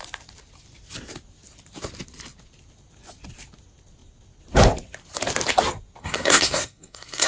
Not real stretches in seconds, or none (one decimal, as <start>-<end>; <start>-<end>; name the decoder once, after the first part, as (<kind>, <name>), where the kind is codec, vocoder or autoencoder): 6.0-7.3 (codec, SNAC)